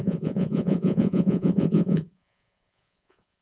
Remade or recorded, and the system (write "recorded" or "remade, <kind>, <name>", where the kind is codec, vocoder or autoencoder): remade, vocoder, Vocos